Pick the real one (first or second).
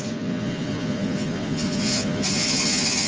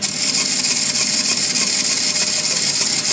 second